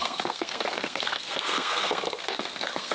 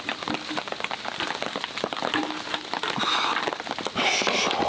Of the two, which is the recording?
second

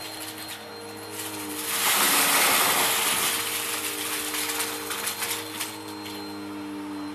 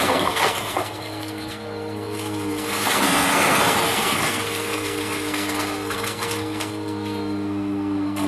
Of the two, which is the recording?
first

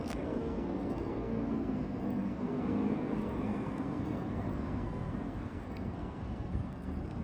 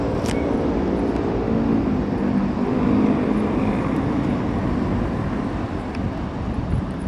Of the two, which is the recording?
second